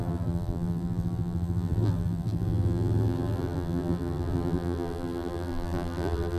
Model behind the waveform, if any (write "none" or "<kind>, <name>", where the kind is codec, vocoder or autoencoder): vocoder, BigVGAN v2